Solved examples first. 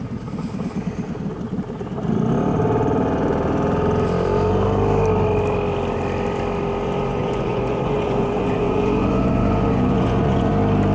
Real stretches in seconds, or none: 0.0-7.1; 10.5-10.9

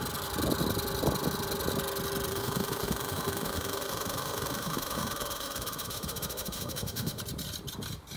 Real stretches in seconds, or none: 0.0-2.3; 7.2-8.2

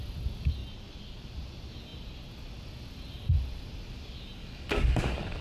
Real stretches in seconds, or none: 0.0-4.4

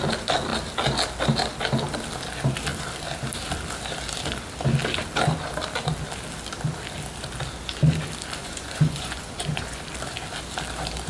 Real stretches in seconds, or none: 0.0-8.4; 9.8-11.1

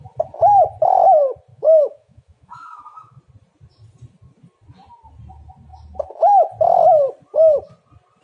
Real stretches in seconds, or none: 0.0-1.5; 3.2-8.2

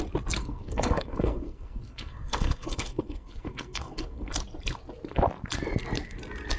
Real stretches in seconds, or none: 0.0-0.4; 4.3-6.6

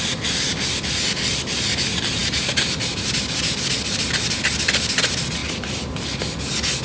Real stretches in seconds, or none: 0.0-6.8

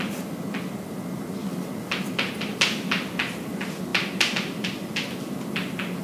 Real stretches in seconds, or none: 0.0-6.0